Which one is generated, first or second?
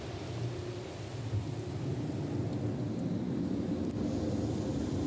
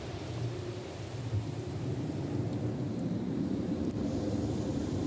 second